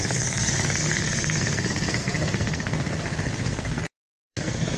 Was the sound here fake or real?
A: fake